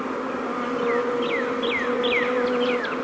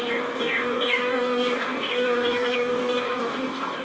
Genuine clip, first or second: first